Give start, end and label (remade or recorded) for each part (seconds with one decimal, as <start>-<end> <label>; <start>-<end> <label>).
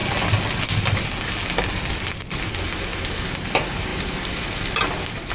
0.0-3.9 recorded; 3.9-4.8 remade; 4.8-5.3 recorded